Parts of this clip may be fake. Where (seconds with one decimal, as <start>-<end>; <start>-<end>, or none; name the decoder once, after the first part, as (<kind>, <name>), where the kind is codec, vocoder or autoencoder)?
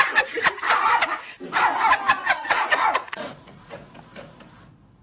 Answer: 2.2-4.0 (vocoder, Vocos)